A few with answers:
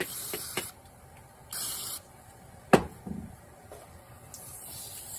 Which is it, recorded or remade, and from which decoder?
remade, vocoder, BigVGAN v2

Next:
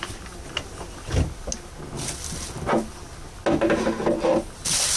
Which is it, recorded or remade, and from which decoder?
recorded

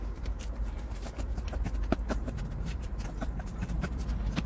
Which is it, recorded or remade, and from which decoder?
remade, vocoder, BigVGAN v2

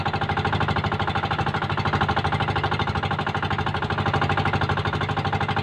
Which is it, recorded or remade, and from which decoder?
recorded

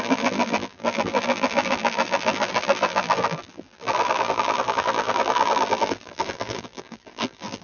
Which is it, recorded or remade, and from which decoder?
remade, vocoder, BigVGAN v2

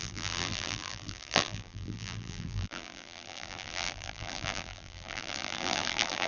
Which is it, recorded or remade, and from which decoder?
remade, vocoder, BigVGAN v2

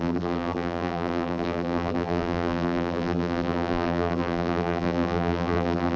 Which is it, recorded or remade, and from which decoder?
remade, vocoder, BigVGAN v2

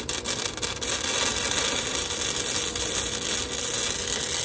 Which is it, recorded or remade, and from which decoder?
recorded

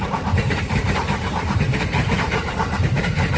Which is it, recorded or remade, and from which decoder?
remade, vocoder, BigVGAN v2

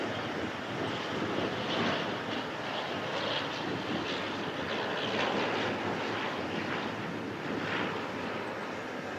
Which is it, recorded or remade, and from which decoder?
recorded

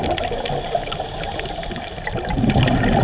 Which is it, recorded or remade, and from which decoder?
remade, vocoder, BigVGAN v2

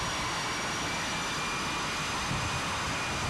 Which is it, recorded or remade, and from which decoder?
recorded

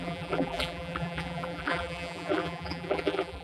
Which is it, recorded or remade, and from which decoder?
remade, vocoder, BigVGAN v2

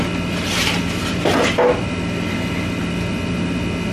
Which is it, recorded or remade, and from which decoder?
recorded